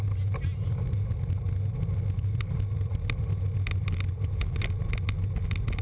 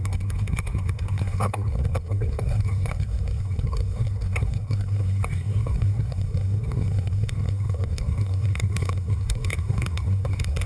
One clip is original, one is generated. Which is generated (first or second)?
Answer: second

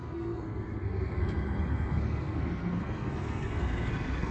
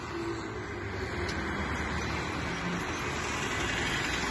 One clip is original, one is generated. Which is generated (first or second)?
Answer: first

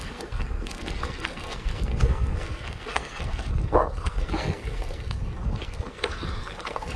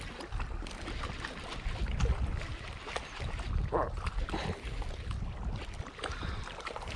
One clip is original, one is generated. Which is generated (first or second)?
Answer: first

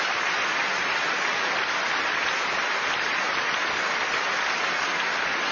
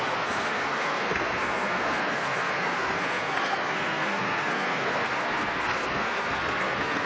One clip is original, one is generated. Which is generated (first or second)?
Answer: second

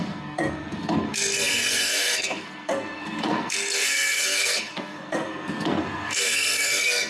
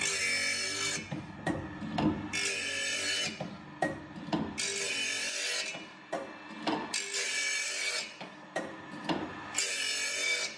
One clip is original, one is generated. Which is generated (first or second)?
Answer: first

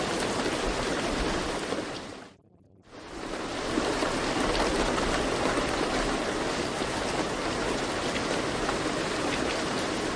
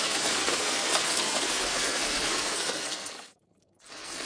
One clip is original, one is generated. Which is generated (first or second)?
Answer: second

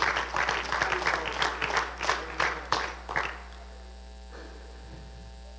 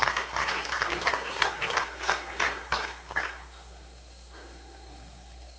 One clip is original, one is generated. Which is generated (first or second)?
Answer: second